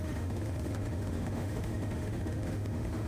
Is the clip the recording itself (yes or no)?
no